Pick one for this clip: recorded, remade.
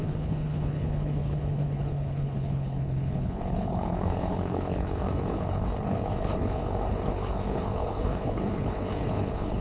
remade